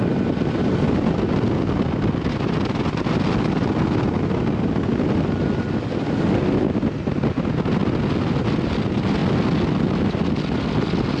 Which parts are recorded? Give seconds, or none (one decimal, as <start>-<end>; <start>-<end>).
0.0-11.2